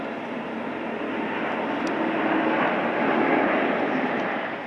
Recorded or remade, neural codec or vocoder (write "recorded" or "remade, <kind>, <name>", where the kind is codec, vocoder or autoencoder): recorded